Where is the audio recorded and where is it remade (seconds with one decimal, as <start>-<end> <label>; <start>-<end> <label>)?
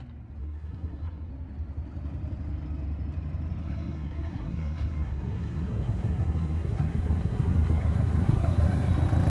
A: 0.0-0.4 recorded; 0.4-1.3 remade; 1.3-3.6 recorded; 3.6-8.9 remade; 8.9-9.3 recorded